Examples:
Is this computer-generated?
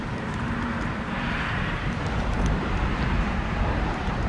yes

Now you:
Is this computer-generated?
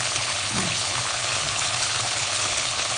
yes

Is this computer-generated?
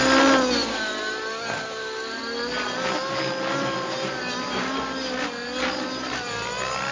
no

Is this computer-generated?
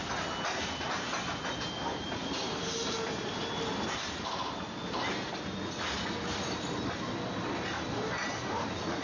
no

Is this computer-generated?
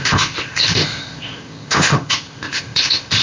yes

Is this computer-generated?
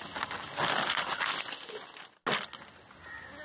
no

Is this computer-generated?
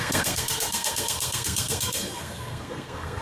yes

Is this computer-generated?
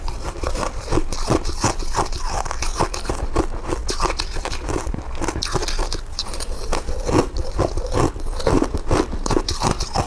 no